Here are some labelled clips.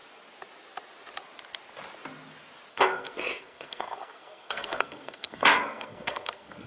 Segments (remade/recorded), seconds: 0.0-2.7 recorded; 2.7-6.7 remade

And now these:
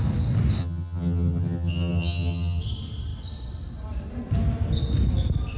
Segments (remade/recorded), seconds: 0.0-0.6 recorded; 0.6-2.6 remade; 2.6-5.6 recorded

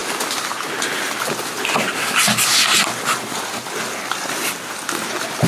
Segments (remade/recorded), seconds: 0.0-5.5 recorded